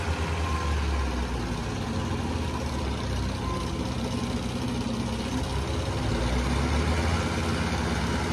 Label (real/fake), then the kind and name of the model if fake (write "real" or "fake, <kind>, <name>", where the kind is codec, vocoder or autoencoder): real